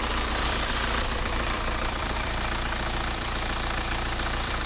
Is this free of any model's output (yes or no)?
no